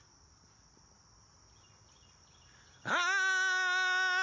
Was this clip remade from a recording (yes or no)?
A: no